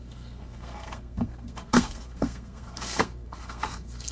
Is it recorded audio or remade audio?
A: remade